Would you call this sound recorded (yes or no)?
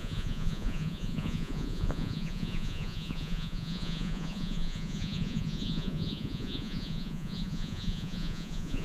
no